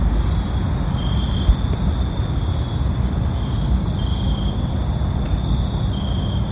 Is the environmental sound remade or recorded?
recorded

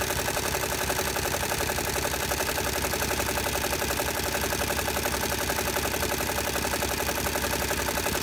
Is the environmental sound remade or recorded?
remade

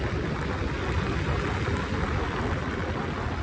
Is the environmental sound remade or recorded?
recorded